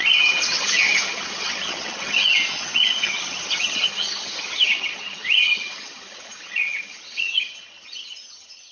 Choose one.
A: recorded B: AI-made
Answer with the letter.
B